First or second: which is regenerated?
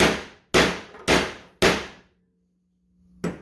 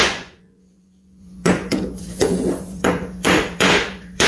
second